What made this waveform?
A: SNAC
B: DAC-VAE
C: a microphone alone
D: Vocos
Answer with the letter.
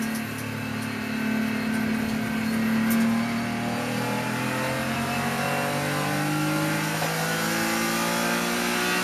C